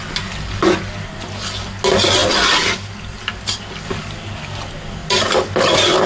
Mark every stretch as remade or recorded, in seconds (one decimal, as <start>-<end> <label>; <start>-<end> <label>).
0.0-6.1 recorded